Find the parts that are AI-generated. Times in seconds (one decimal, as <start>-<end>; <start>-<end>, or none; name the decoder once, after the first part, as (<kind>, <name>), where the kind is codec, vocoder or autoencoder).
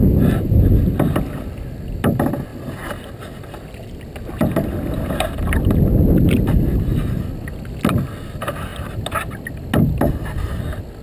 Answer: none